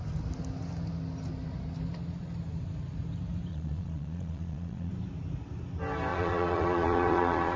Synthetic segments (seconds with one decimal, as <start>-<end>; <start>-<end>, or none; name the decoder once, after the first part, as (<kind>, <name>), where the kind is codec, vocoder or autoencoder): 3.5-4.9 (vocoder, Vocos); 6.1-7.6